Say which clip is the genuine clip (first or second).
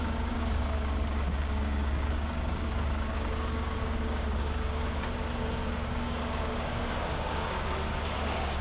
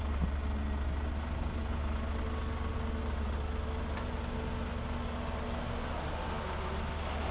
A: second